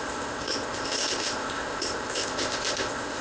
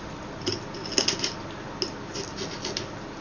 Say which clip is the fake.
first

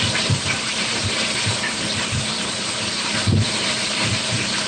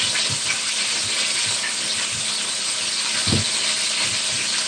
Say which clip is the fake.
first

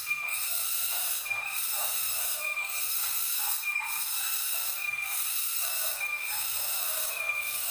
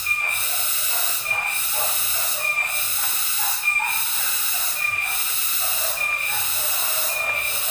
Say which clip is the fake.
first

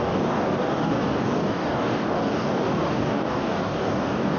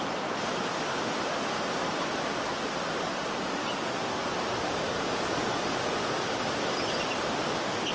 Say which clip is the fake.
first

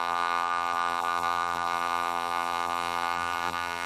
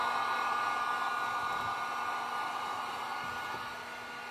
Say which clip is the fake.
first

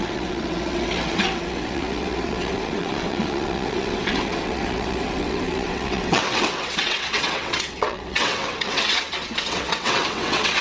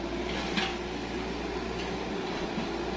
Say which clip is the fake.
first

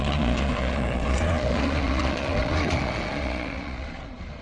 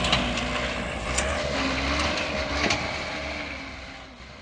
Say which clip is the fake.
first